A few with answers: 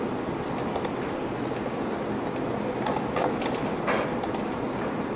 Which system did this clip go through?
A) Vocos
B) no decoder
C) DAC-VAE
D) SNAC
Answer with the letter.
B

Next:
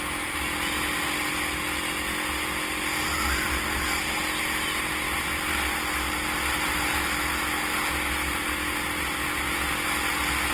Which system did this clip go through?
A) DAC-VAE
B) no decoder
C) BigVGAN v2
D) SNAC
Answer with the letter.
B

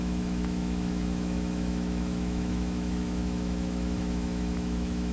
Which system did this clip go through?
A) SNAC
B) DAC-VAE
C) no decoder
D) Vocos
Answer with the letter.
B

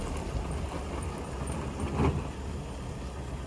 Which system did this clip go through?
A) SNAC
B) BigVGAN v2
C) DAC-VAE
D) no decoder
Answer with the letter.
D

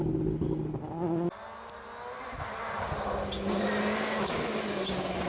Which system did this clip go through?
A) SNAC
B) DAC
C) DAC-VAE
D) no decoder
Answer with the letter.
D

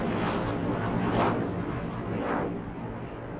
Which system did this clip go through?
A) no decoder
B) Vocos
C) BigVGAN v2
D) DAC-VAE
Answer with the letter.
A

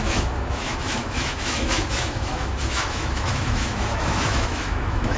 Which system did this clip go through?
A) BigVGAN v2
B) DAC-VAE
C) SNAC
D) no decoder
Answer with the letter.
B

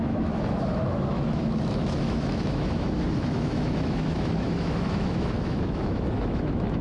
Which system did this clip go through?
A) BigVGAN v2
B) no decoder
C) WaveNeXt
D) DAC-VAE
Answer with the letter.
D